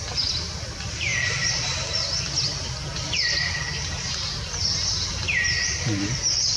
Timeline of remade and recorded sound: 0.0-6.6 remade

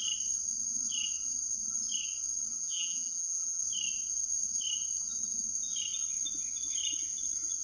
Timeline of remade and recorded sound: 0.0-2.6 recorded; 2.6-3.6 remade; 3.6-7.6 recorded

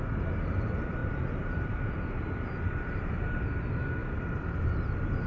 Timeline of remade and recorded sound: 0.0-1.0 recorded; 1.0-3.1 remade; 3.1-4.0 recorded; 4.0-4.8 remade; 4.8-5.3 recorded